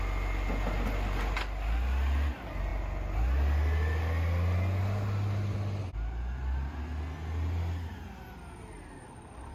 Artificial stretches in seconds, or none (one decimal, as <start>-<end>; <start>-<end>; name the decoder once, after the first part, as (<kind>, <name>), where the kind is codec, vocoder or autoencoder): none